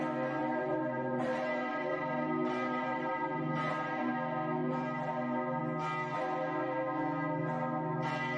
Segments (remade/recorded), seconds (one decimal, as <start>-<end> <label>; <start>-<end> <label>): 0.0-0.4 recorded; 0.4-4.1 remade; 4.1-4.6 recorded; 4.6-5.1 remade; 5.1-8.4 recorded

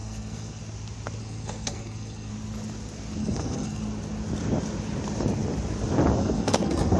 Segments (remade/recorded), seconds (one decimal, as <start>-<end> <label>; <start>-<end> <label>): 0.0-0.6 remade; 0.6-1.2 recorded; 1.2-2.3 remade; 2.3-3.2 recorded; 3.2-3.8 remade; 3.8-6.2 recorded; 6.2-7.0 remade

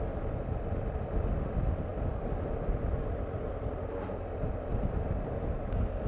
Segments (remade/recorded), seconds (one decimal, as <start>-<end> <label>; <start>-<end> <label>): 0.0-6.1 recorded